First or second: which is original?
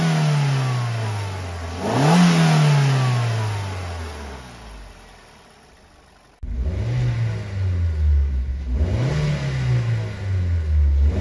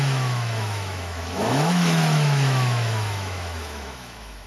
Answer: first